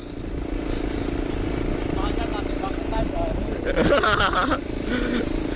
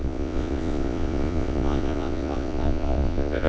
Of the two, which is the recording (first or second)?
first